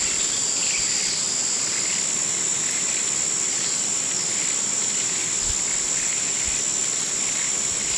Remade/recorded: recorded